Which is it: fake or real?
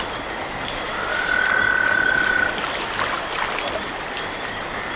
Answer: real